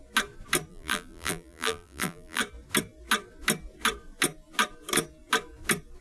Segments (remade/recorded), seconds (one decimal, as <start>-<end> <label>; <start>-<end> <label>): 0.0-0.7 recorded; 0.7-2.4 remade; 2.4-6.0 recorded